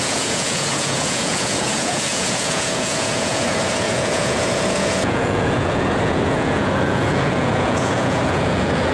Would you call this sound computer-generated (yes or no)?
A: yes